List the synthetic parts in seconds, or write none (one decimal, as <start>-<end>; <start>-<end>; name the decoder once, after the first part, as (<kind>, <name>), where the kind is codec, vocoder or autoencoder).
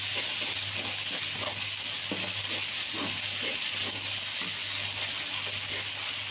none